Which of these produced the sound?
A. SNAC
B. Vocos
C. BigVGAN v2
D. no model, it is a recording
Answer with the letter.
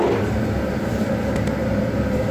D